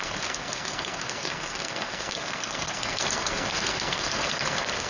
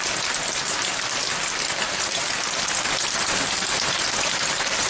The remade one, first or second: first